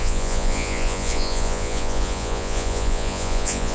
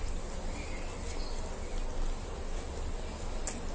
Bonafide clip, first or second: second